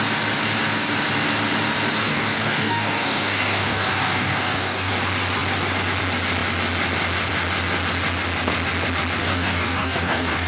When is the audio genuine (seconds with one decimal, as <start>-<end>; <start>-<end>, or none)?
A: 0.0-2.0; 4.9-9.2